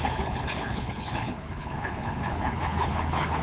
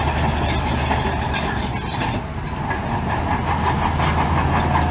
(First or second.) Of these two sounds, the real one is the second